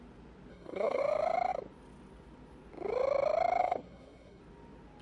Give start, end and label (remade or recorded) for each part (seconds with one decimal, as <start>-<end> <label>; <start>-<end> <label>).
0.0-0.5 recorded; 0.5-1.0 remade; 1.0-3.6 recorded; 3.6-4.4 remade; 4.4-5.0 recorded